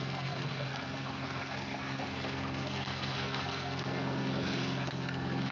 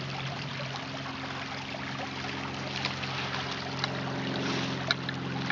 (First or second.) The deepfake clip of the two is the first